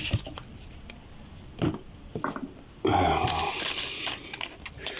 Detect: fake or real real